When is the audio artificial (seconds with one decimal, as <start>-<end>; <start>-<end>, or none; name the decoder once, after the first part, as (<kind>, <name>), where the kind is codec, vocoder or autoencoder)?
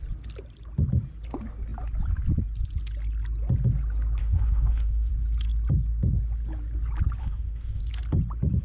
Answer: 4.2-5.1 (autoencoder, DAC-VAE); 7.2-7.8